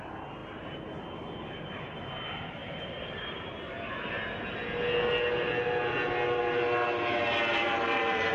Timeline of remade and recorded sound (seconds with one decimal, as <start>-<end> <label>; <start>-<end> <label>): 0.0-2.6 recorded; 2.6-4.6 remade; 4.6-7.5 recorded; 7.5-8.3 remade

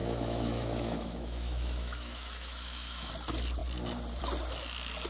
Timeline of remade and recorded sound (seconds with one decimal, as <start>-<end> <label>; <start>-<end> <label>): 0.0-3.1 remade; 3.1-5.1 recorded

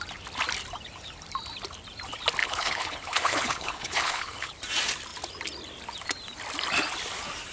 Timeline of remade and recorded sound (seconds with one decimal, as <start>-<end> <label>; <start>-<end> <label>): 0.0-2.4 recorded; 2.4-4.5 remade; 4.5-7.5 recorded

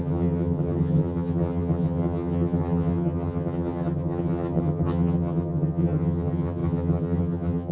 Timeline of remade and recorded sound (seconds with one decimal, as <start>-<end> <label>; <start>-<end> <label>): 0.0-7.7 remade

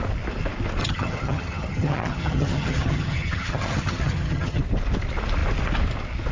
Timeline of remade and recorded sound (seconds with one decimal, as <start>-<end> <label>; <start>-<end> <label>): 0.0-0.8 recorded; 0.8-4.6 remade; 4.6-6.3 recorded

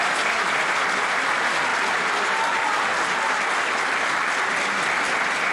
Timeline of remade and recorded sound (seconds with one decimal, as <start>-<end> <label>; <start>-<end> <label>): 0.0-5.5 recorded

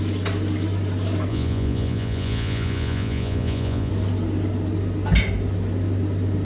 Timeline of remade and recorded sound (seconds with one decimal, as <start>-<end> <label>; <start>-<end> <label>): 0.0-1.3 recorded; 1.3-3.9 remade; 3.9-6.4 recorded

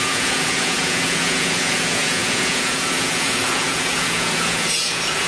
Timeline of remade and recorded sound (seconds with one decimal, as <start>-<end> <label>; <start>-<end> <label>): 0.0-5.3 remade